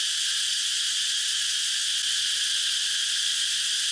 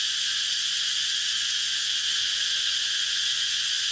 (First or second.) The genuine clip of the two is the first